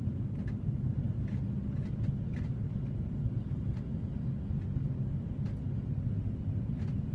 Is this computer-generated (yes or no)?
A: no